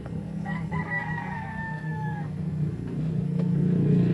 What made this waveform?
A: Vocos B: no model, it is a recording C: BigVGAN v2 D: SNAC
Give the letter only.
D